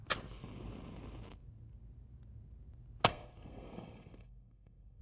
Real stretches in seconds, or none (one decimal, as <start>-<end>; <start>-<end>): 0.0-3.1